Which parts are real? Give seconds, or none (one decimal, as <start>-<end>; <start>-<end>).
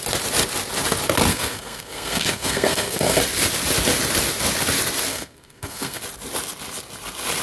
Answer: 0.0-1.3; 3.2-5.1; 6.0-7.4